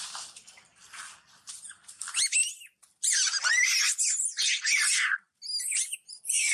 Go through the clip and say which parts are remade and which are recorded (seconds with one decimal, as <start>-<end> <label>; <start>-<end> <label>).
0.0-6.5 recorded